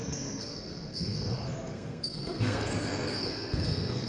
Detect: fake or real fake